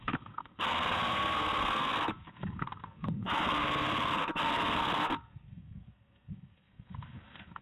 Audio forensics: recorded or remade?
remade